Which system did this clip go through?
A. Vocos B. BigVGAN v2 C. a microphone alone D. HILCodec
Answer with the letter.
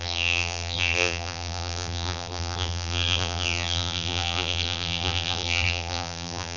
B